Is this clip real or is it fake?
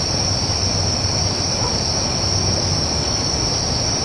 real